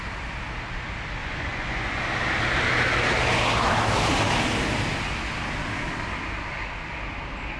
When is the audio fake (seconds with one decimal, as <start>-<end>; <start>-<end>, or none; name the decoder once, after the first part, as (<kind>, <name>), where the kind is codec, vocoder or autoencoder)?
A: 1.2-2.0 (vocoder, Vocos)